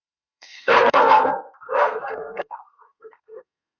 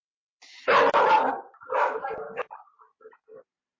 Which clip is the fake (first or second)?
first